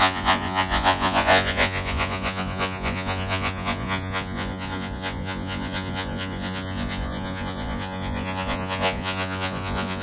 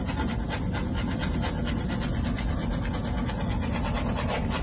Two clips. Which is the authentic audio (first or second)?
second